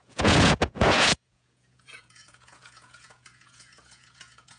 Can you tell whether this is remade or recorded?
remade